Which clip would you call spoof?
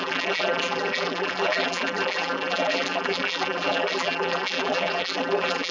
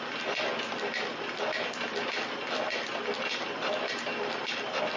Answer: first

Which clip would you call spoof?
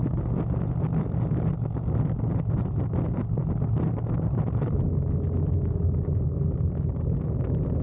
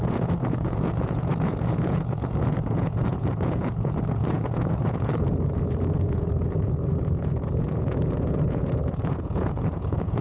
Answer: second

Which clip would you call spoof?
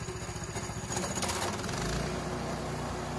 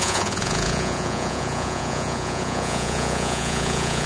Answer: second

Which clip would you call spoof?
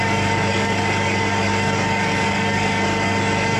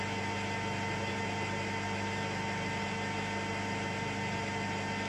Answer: first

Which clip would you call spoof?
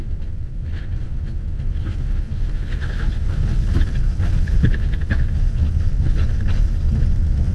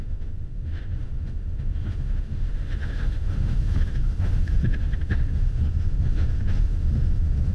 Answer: second